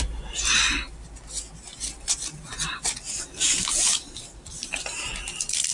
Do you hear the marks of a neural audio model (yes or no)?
no